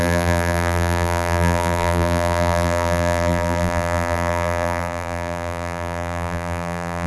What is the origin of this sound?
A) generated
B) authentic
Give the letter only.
A